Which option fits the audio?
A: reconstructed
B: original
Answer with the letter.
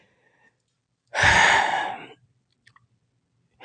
B